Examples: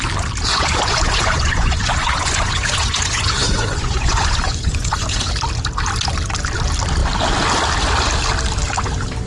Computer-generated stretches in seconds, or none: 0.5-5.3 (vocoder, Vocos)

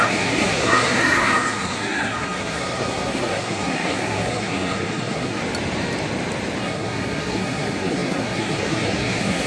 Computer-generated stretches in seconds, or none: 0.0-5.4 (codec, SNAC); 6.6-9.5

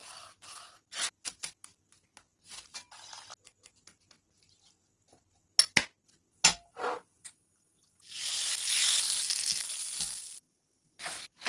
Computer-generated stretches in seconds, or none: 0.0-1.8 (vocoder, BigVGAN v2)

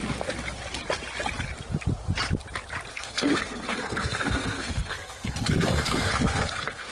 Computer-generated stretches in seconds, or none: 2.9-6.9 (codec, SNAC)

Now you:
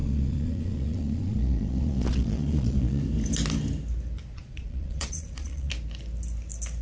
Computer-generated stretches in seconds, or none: 0.0-3.0 (vocoder, Vocos); 4.3-5.7